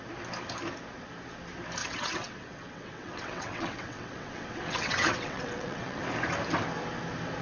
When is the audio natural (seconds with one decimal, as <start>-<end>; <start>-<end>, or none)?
0.0-1.8; 6.0-7.4